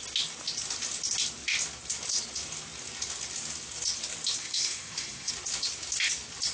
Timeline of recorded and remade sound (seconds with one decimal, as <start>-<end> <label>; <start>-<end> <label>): 0.0-4.4 recorded; 4.4-5.3 remade; 5.3-6.5 recorded